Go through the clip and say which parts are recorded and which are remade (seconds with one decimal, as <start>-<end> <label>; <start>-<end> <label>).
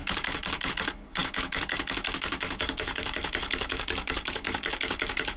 0.0-5.4 remade